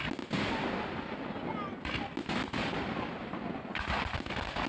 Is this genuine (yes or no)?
yes